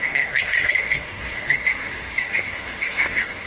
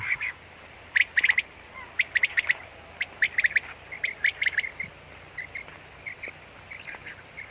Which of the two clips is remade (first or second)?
first